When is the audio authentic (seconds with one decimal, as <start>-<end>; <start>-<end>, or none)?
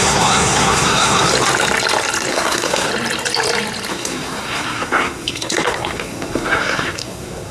1.3-2.3; 2.9-3.9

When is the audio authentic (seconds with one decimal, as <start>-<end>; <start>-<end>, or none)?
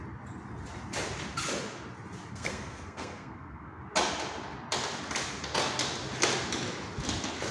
0.0-2.3; 3.8-7.5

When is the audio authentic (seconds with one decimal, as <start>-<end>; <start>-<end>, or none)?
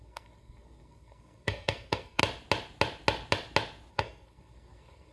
2.2-3.9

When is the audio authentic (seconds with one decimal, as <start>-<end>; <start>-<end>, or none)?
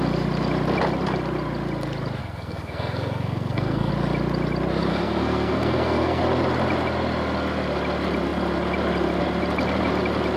0.0-2.2; 3.9-4.9; 6.2-10.4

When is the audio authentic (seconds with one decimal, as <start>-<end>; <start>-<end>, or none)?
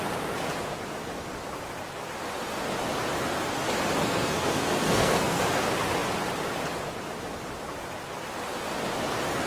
0.0-4.0; 5.4-9.5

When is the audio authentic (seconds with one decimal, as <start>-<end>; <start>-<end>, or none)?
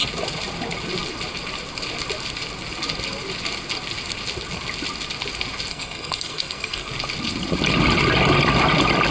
0.0-5.7; 6.9-9.1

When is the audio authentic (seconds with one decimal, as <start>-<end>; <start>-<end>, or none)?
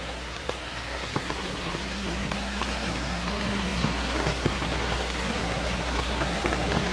none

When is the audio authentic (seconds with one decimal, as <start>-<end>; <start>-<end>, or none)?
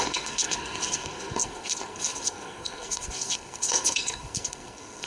none